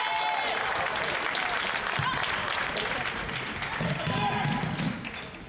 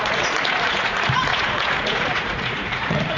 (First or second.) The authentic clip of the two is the first